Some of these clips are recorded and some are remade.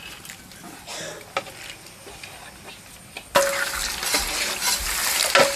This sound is recorded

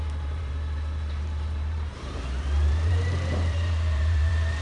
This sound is remade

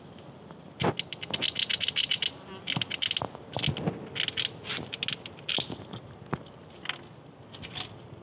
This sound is recorded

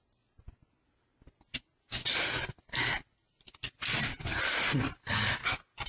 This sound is recorded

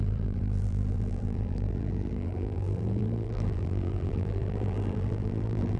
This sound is remade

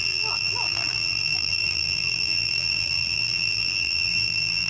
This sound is remade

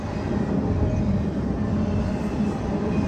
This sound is recorded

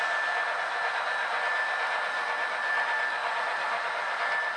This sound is recorded